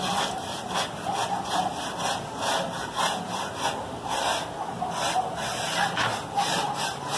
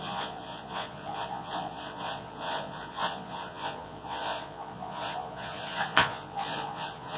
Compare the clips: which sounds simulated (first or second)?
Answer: second